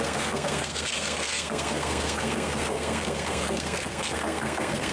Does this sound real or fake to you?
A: fake